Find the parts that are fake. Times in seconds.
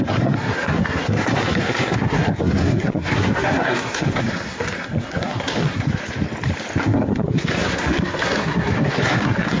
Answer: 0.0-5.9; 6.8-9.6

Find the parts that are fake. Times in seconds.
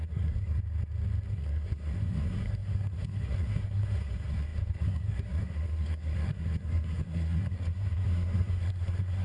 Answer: 0.0-0.6; 1.3-9.2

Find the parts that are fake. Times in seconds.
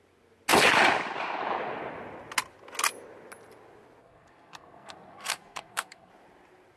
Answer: 4.0-6.1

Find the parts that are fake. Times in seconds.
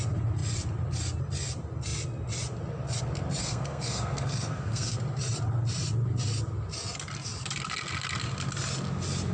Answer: 3.4-5.0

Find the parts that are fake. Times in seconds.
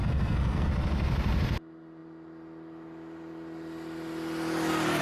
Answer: 0.0-0.7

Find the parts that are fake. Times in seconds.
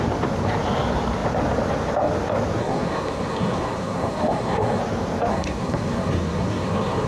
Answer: 2.6-4.8; 5.3-7.1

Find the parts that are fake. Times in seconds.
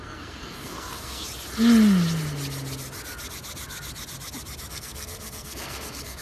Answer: 0.0-1.2; 4.7-6.2